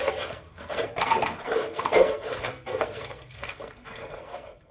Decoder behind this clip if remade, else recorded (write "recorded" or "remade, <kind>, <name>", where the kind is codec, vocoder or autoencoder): remade, codec, SNAC